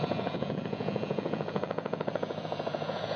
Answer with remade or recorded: remade